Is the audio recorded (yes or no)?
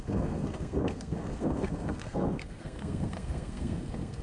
no